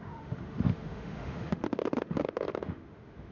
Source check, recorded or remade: remade